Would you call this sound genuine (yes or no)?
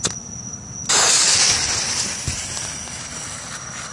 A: yes